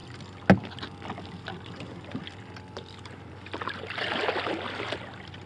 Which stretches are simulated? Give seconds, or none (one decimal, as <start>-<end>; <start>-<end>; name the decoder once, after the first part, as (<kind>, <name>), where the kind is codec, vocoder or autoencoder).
none